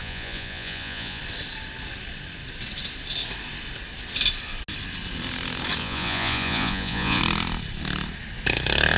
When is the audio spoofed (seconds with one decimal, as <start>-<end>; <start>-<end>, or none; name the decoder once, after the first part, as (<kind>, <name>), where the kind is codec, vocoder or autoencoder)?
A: 0.0-1.2 (vocoder, Vocos); 5.8-7.2